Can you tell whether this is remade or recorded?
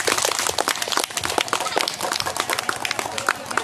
recorded